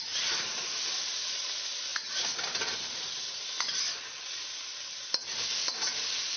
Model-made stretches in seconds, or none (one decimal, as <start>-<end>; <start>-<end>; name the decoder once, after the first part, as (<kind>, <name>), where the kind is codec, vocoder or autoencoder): none